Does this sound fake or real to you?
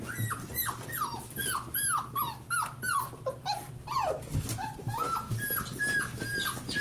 real